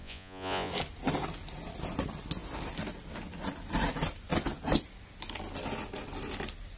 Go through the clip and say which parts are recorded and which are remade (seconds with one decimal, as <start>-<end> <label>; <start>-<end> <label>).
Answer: 0.0-0.7 remade; 0.7-6.8 recorded